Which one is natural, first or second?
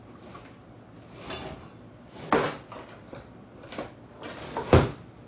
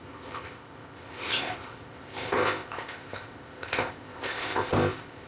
first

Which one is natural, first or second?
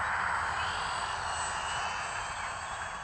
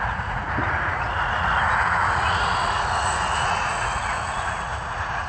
first